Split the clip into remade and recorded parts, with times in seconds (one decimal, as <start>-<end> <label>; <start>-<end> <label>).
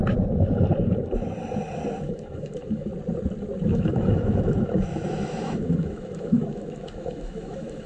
0.0-2.0 recorded; 2.0-2.9 remade; 2.9-3.6 recorded; 3.6-7.9 remade